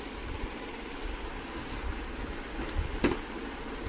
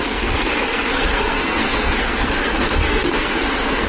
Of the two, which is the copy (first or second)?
second